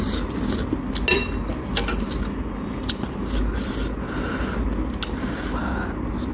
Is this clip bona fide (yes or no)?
yes